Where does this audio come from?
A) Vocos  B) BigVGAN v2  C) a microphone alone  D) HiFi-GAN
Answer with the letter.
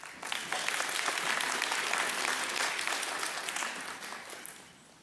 C